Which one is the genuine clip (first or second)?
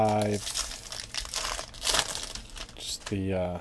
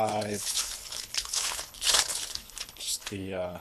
first